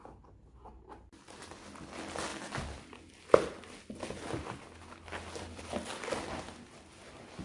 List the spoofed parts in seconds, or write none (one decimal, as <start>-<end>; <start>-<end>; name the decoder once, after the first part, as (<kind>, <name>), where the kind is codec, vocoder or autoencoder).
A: none